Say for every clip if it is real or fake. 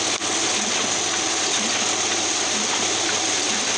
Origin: real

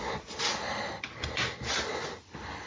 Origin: real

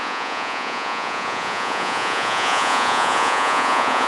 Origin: fake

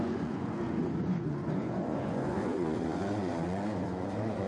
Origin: fake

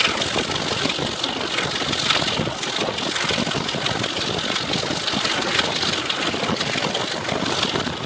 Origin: real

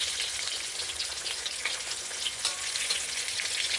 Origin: fake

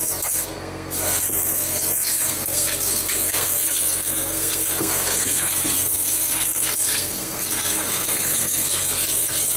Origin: fake